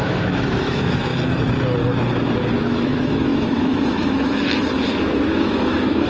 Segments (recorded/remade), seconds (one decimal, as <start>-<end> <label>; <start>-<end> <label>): 0.0-1.1 remade; 1.1-2.6 recorded; 2.6-6.1 remade